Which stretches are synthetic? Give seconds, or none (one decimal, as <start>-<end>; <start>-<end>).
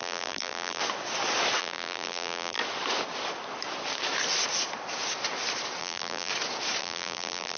0.0-0.8; 1.6-2.6; 5.8-6.3; 6.8-7.6